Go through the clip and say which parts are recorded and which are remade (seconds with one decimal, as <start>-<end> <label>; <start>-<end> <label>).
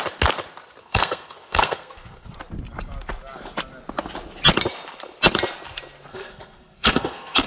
0.0-0.8 recorded; 0.8-2.3 remade; 2.3-6.1 recorded; 6.1-7.5 remade